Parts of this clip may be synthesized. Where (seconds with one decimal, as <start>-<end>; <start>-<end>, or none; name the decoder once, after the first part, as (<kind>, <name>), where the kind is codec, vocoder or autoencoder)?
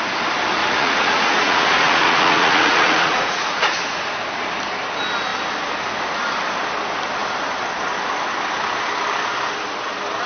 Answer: 0.6-4.1 (vocoder, Vocos)